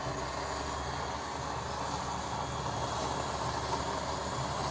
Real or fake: real